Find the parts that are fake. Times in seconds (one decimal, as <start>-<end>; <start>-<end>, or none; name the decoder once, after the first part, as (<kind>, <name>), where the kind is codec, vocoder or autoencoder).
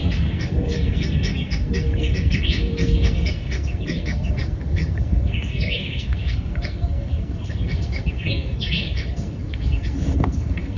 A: 0.0-10.8 (codec, SNAC)